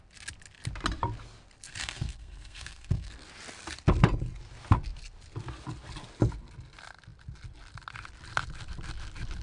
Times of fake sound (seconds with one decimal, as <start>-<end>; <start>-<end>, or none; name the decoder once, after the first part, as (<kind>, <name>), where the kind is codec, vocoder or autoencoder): 1.8-3.1 (codec, SNAC)